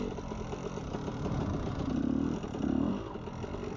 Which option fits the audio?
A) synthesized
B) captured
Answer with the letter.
B